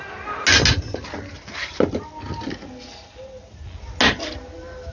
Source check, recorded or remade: recorded